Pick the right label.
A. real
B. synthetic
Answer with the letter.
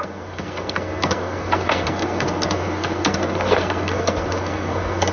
B